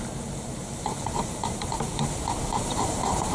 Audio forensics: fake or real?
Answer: fake